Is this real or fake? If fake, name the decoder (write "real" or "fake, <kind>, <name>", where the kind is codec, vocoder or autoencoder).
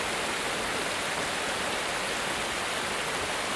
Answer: real